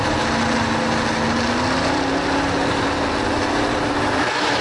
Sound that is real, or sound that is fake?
real